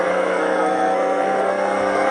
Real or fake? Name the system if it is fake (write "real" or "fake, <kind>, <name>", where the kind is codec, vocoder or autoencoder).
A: fake, codec, SNAC